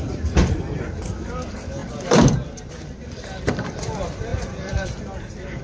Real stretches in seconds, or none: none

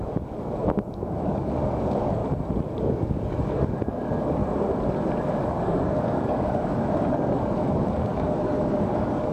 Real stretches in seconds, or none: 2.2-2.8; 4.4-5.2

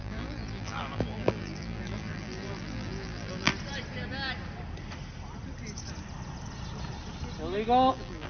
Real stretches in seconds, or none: 3.5-7.9

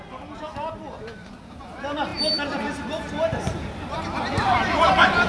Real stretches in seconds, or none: 0.0-5.3